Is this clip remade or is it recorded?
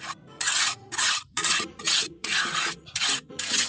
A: remade